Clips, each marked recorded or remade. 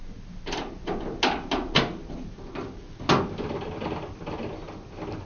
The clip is recorded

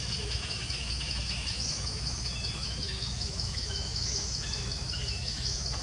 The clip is remade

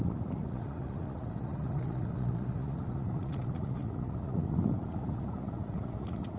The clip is remade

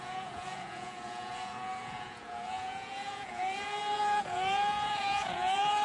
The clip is remade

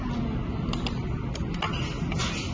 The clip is recorded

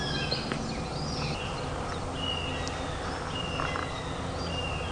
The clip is recorded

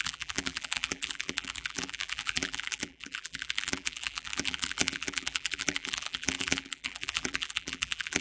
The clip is remade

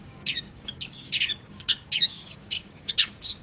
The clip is remade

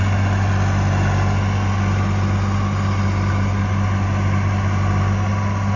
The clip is recorded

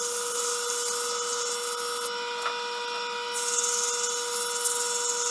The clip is recorded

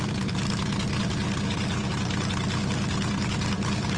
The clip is recorded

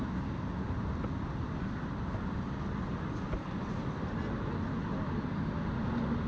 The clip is recorded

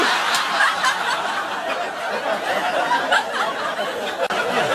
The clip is recorded